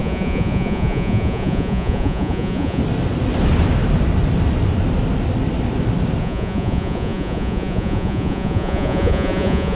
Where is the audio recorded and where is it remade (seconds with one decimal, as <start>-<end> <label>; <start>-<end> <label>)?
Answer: 0.0-2.8 remade; 2.8-6.2 recorded; 6.2-9.7 remade